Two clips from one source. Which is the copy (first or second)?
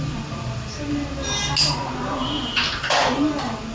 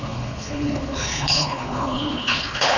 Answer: second